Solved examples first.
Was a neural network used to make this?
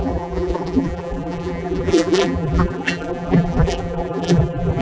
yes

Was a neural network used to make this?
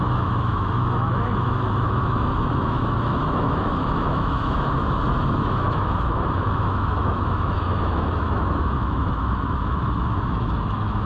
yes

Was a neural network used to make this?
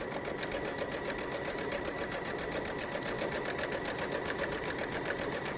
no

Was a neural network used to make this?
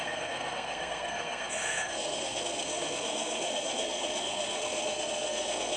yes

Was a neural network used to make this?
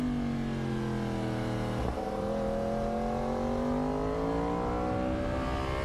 no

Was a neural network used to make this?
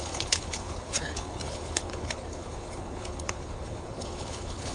yes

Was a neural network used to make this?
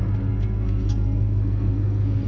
yes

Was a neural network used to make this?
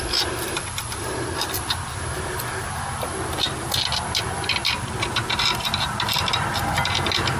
no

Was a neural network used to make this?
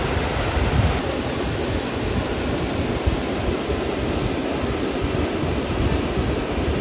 no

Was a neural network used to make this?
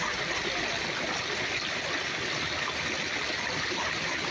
no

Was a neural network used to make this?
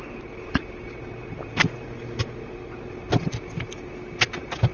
no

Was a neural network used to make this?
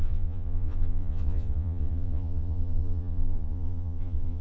yes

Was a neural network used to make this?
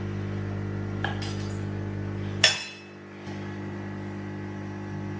no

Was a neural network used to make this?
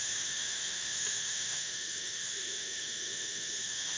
yes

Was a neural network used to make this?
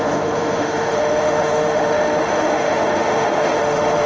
yes